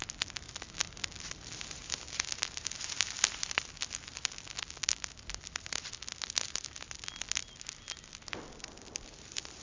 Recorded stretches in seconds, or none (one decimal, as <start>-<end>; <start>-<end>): 0.0-9.6